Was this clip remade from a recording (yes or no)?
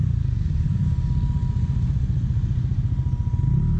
no